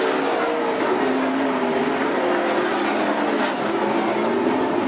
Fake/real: real